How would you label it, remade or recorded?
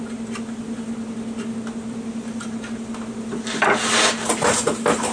recorded